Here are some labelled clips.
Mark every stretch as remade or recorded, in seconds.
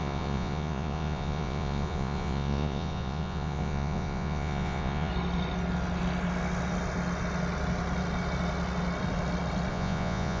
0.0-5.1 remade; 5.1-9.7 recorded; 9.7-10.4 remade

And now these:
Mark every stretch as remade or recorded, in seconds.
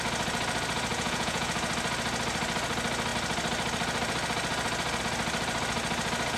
0.0-0.9 recorded; 0.9-1.5 remade; 1.5-6.4 recorded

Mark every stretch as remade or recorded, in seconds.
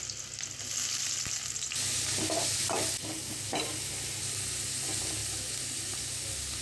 0.0-6.6 recorded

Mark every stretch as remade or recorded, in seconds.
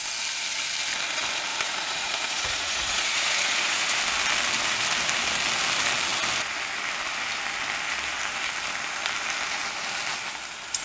0.0-1.5 recorded; 1.5-4.0 remade; 4.0-10.8 recorded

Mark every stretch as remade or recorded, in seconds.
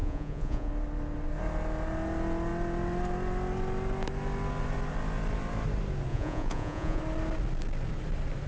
0.0-0.7 remade; 0.7-6.1 recorded; 6.1-7.0 remade; 7.0-8.5 recorded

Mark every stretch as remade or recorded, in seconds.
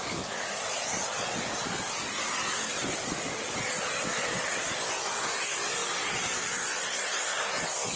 0.0-4.2 recorded; 4.2-4.7 remade; 4.7-8.0 recorded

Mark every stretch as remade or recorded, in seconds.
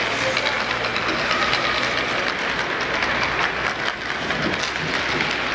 0.0-5.5 recorded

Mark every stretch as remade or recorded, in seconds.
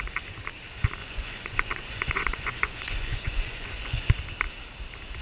0.0-1.0 recorded; 1.0-4.1 remade; 4.1-5.2 recorded